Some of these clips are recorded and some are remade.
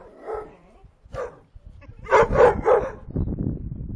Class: remade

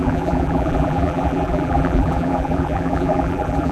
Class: remade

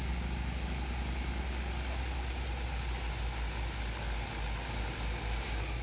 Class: recorded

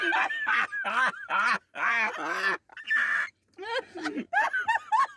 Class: recorded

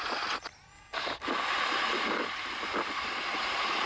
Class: recorded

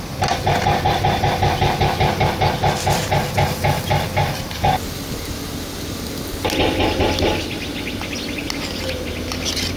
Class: recorded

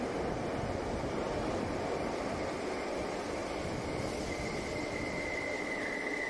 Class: recorded